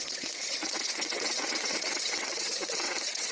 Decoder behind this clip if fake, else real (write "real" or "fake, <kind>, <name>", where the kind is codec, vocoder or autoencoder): fake, vocoder, WaveNeXt